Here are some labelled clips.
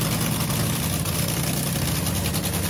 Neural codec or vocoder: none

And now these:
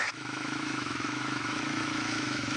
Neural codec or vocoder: autoencoder, DAC-VAE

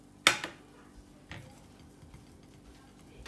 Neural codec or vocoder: none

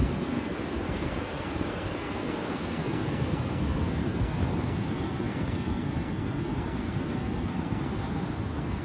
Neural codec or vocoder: codec, SNAC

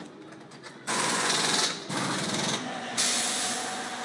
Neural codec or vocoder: vocoder, Vocos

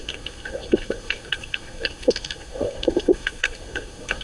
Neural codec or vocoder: codec, SNAC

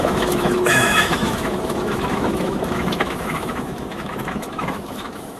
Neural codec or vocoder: autoencoder, DAC-VAE